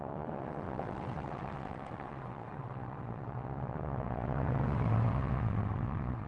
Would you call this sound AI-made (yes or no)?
yes